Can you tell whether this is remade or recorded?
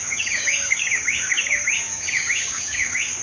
remade